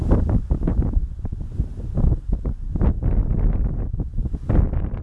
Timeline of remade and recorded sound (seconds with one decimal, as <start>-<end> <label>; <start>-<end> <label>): 0.0-5.0 recorded